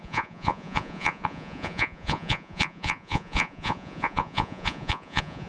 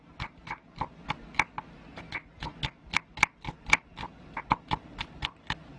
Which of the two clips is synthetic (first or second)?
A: first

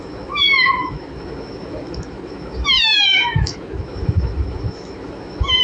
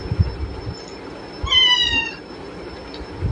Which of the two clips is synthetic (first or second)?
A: first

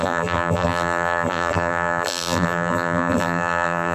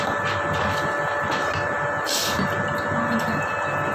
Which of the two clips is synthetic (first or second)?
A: first